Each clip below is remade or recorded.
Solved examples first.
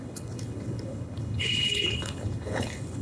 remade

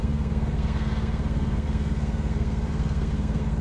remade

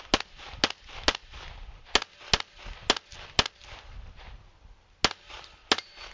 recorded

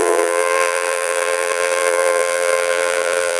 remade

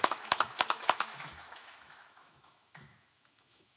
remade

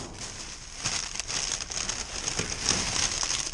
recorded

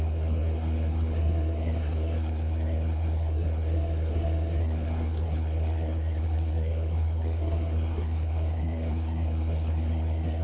remade